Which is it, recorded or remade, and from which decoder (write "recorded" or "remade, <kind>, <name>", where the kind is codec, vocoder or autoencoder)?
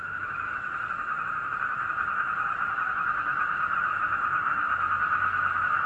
remade, autoencoder, DAC-VAE